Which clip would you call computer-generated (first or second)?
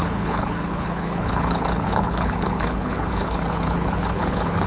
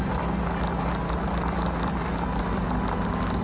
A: first